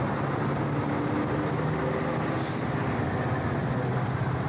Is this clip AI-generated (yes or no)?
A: no